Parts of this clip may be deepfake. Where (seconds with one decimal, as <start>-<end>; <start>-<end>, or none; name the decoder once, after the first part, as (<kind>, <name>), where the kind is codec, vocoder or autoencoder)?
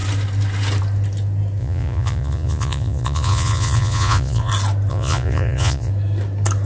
1.6-4.5 (vocoder, Vocos); 4.9-5.9